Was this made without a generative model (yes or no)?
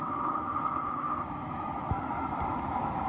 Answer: no